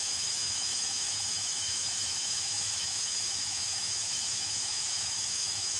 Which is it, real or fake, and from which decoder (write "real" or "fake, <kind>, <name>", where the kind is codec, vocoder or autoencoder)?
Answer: fake, autoencoder, DAC-VAE